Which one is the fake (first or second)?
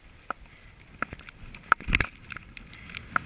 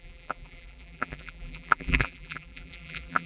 second